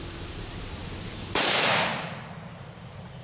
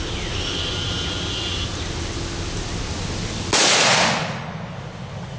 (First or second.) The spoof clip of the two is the first